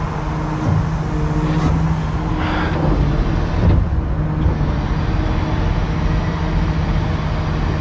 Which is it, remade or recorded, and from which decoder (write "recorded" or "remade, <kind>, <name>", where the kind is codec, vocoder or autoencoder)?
recorded